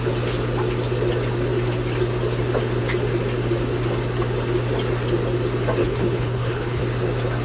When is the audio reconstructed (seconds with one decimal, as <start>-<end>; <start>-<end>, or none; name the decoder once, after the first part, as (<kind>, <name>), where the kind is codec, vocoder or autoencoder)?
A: 5.8-6.8 (codec, HILCodec)